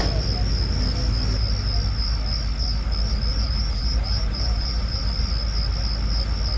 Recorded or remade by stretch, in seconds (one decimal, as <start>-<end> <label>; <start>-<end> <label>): 0.0-3.3 recorded; 3.3-5.0 remade; 5.0-6.6 recorded